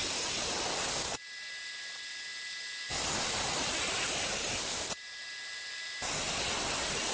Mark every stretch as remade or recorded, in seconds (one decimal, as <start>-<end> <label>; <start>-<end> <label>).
0.0-7.1 recorded